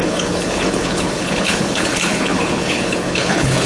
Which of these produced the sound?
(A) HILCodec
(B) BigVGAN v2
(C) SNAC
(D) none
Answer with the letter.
A